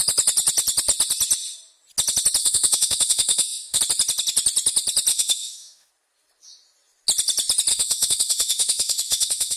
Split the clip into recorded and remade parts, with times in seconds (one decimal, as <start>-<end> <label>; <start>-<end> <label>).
0.0-2.4 recorded; 2.4-3.8 remade; 3.8-5.1 recorded; 5.1-5.9 remade; 5.9-7.7 recorded; 7.7-9.6 remade